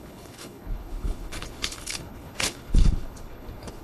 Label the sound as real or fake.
fake